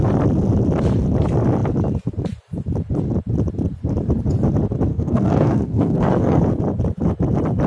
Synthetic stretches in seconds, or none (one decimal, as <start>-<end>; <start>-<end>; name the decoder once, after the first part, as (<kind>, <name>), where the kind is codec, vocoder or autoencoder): 4.9-6.4 (codec, SNAC)